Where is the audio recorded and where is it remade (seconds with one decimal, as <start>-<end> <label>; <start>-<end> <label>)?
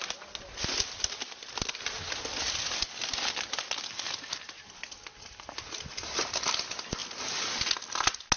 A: 0.0-8.4 recorded